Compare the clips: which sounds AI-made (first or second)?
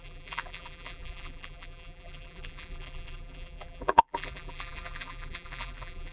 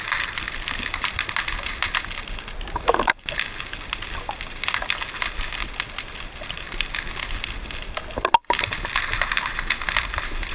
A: first